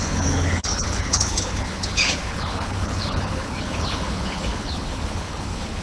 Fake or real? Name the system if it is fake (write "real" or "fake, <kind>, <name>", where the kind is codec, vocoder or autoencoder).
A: fake, codec, HILCodec